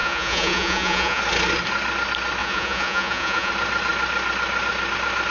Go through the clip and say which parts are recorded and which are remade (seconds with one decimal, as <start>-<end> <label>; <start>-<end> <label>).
0.0-1.2 remade; 1.2-2.4 recorded; 2.4-3.5 remade; 3.5-5.3 recorded